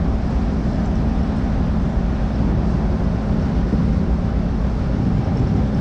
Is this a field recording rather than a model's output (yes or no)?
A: yes